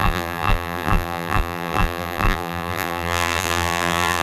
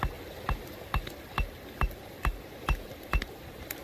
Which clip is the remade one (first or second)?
first